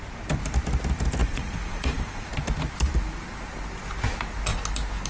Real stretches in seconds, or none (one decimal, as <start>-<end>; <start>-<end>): 0.0-1.2; 2.3-5.1